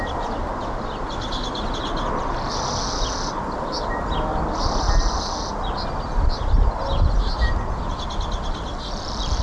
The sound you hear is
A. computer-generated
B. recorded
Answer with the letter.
B